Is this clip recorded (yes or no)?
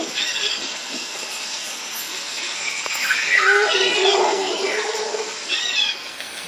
no